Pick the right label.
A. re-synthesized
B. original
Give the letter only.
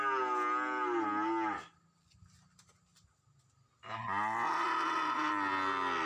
B